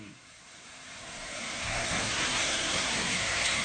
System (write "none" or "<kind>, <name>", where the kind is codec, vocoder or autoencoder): codec, SNAC